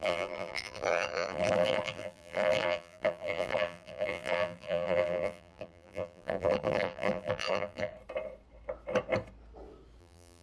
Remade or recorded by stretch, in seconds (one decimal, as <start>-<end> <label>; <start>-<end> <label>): 0.0-7.9 remade; 7.9-10.0 recorded; 10.0-10.4 remade